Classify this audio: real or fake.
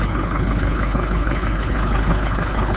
fake